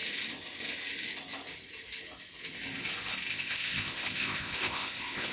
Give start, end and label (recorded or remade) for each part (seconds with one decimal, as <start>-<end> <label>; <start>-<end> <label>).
0.0-3.3 recorded; 3.3-5.3 remade